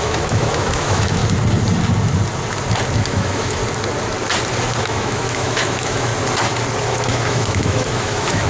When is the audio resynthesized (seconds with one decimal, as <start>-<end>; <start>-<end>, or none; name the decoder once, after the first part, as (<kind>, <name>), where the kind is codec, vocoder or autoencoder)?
0.0-1.2 (autoencoder, DAC-VAE); 3.0-3.6; 4.8-6.1; 6.8-8.5